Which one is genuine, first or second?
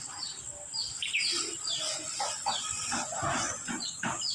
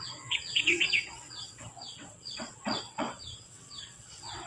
first